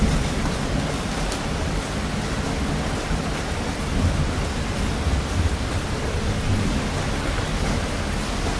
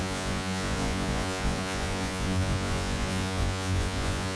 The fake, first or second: second